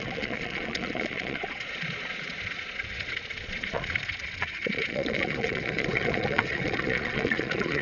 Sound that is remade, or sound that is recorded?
remade